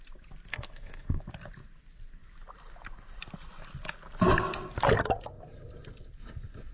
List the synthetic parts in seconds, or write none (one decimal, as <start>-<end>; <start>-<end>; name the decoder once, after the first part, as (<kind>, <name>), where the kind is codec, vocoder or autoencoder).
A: 0.5-1.2 (codec, SNAC)